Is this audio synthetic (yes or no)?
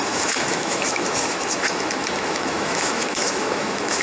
yes